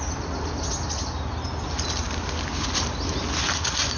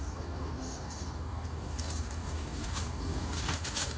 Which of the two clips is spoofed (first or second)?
second